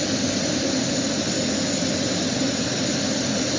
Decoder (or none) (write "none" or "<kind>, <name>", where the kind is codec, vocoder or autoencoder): none